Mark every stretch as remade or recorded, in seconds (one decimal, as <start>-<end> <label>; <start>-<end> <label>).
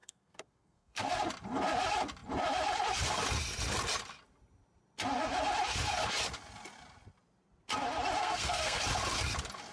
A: 0.0-1.1 remade; 1.1-8.2 recorded; 8.2-8.8 remade; 8.8-9.7 recorded